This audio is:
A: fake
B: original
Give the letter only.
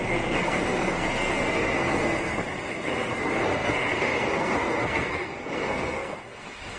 A